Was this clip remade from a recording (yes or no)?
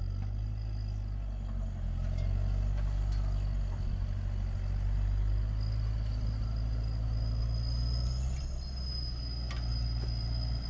no